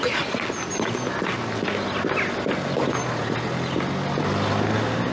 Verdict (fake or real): real